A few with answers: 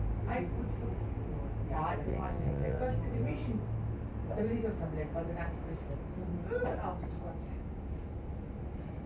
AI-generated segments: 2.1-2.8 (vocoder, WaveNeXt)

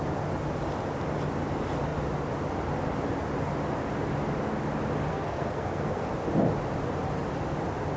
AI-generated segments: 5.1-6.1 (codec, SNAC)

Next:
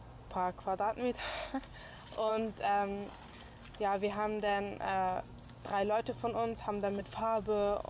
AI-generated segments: 1.2-1.8 (autoencoder, DAC-VAE)